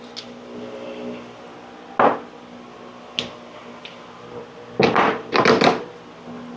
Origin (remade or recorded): recorded